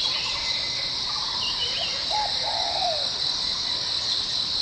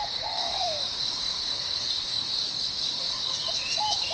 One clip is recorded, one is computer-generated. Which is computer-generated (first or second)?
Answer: second